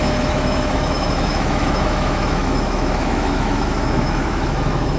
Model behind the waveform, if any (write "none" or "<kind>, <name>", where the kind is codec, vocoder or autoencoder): autoencoder, DAC-VAE